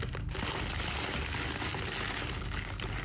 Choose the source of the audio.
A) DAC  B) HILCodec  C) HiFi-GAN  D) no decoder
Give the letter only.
D